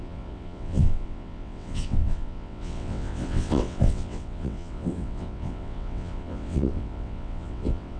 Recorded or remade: remade